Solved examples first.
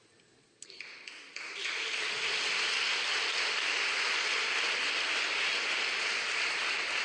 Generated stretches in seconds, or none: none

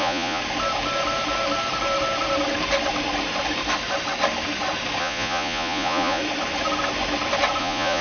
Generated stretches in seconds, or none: 0.0-0.4 (vocoder, Vocos); 5.0-6.2; 7.6-8.0

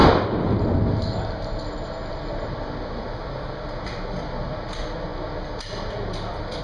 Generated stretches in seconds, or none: none

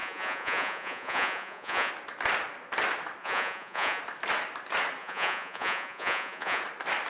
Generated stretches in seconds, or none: 0.0-1.9 (vocoder, Vocos); 3.2-4.0; 5.0-6.6

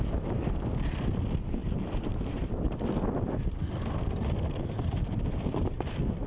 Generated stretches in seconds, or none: none

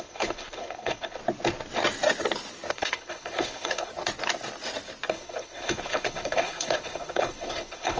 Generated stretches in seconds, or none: 0.0-1.2 (codec, HILCodec); 2.7-3.9; 5.1-8.0